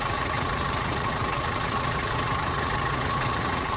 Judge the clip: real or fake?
fake